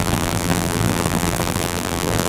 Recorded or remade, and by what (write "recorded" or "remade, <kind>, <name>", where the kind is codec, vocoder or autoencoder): remade, vocoder, BigVGAN v2